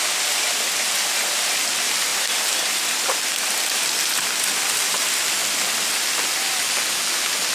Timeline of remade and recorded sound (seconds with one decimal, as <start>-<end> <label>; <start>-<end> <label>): 0.0-7.5 recorded